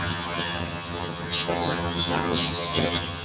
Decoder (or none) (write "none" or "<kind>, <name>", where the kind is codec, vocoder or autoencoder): vocoder, HiFi-GAN